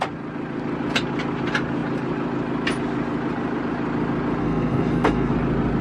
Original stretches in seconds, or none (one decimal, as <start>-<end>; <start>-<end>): 0.0-4.4; 5.3-5.8